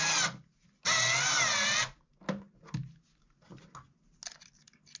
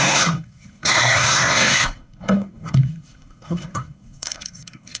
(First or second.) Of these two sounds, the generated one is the second